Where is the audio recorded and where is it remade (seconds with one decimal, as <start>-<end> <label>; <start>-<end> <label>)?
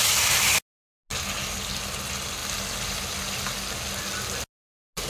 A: 0.0-5.1 recorded